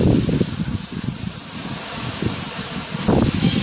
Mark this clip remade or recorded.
recorded